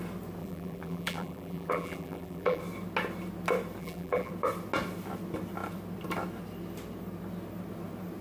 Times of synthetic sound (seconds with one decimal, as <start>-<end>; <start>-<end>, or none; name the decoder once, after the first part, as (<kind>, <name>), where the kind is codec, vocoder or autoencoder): 0.4-2.6 (vocoder, BigVGAN v2); 3.8-4.3